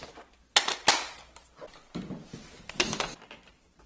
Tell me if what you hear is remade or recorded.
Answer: recorded